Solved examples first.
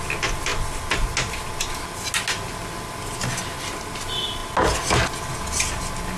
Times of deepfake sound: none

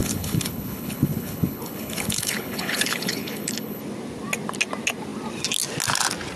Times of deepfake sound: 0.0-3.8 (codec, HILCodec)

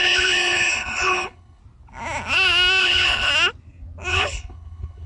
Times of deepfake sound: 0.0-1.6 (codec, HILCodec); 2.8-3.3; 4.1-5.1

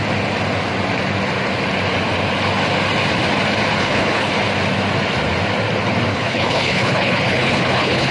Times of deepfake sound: 3.8-4.3 (codec, HILCodec); 6.1-8.1

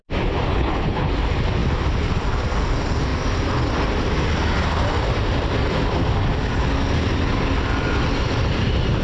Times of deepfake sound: 0.5-1.1 (codec, HILCodec)

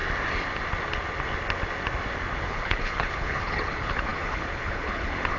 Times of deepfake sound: 2.3-5.4 (codec, HILCodec)

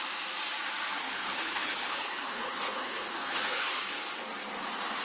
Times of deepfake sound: 1.0-4.0 (codec, HILCodec)